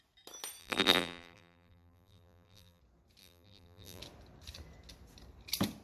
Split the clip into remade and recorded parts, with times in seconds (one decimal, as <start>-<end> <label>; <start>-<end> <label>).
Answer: 0.0-0.6 recorded; 0.6-2.8 remade; 2.8-3.2 recorded; 3.2-4.0 remade; 4.0-5.8 recorded